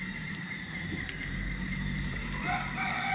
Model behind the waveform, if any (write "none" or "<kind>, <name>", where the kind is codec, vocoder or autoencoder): vocoder, BigVGAN v2